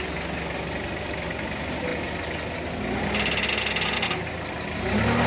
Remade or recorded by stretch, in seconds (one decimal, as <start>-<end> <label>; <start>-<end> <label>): 0.0-5.3 recorded